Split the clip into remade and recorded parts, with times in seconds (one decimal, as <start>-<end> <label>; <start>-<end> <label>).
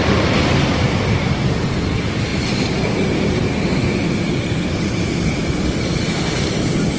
0.0-0.7 remade; 0.7-2.3 recorded; 2.3-6.5 remade; 6.5-7.0 recorded